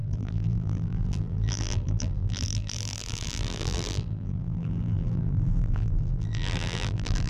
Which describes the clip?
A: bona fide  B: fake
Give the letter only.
B